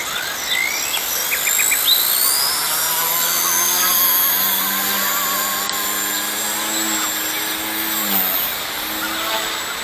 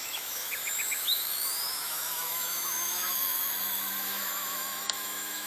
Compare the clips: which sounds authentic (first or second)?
first